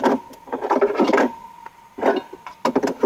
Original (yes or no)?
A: yes